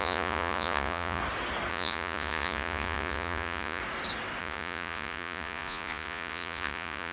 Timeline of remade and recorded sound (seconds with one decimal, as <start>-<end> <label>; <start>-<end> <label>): 0.0-1.2 remade; 1.2-1.7 recorded; 1.7-3.8 remade; 3.8-4.4 recorded; 4.4-7.1 remade

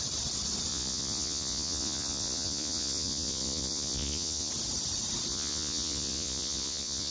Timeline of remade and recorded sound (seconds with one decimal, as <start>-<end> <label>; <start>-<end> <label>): 0.0-0.7 recorded; 0.7-4.5 remade; 4.5-5.3 recorded; 5.3-7.1 remade

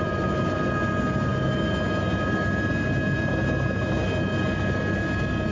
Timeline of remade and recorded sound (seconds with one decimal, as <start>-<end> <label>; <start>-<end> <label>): 0.0-5.5 recorded

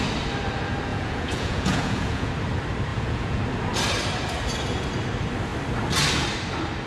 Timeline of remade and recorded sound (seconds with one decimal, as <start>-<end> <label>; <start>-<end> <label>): 0.0-0.9 recorded; 0.9-2.3 remade; 2.3-2.9 recorded; 2.9-3.4 remade; 3.4-6.9 recorded